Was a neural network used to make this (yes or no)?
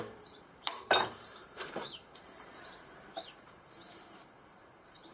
yes